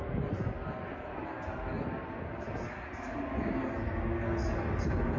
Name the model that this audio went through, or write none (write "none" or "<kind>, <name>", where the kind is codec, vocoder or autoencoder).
none